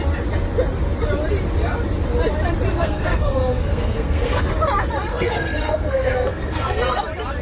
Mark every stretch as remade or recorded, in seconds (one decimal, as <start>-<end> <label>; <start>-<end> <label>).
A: 0.0-2.7 recorded; 2.7-4.4 remade; 4.4-5.1 recorded; 5.1-7.0 remade; 7.0-7.4 recorded